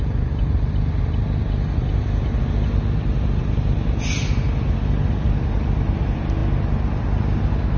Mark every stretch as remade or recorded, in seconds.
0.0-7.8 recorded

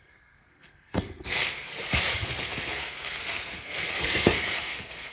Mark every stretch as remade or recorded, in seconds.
0.0-1.7 remade; 1.7-2.2 recorded; 2.2-5.1 remade

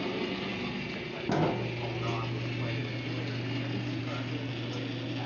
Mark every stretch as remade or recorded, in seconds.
0.0-5.3 recorded

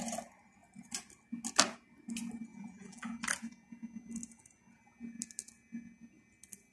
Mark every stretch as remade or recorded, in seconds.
0.0-2.5 recorded; 2.5-3.2 remade; 3.2-6.7 recorded

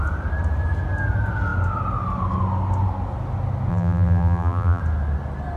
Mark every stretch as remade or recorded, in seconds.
0.0-3.7 recorded; 3.7-4.8 remade; 4.8-5.6 recorded